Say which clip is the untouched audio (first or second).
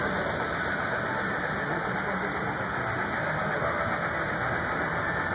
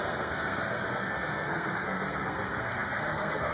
first